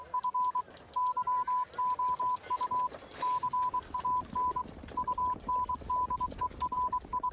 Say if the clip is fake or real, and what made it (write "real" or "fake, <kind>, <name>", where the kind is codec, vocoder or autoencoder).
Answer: real